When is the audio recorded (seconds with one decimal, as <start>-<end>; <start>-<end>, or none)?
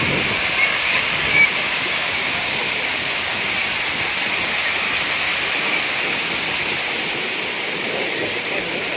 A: 0.0-0.7; 3.5-9.0